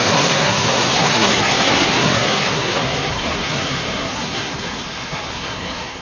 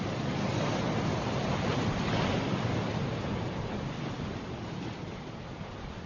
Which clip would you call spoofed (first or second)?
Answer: first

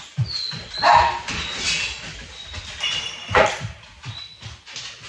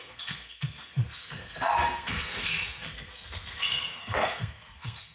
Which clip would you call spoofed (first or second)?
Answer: second